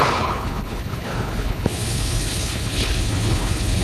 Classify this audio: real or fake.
fake